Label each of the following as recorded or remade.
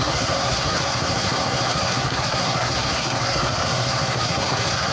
remade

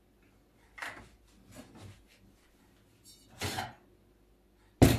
recorded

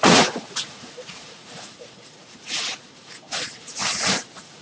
remade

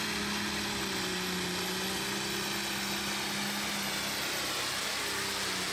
recorded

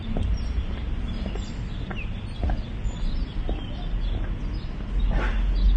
recorded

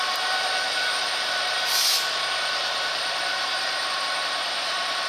remade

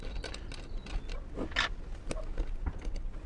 recorded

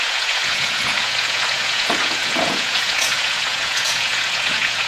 remade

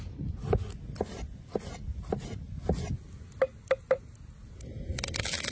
recorded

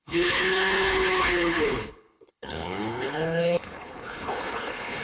remade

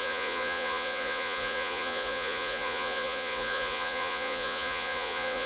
remade